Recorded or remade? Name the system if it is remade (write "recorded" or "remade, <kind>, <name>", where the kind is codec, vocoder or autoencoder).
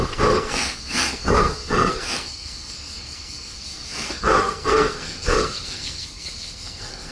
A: remade, codec, SNAC